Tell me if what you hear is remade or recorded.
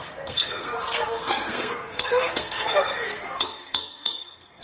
remade